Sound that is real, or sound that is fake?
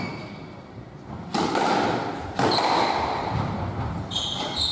real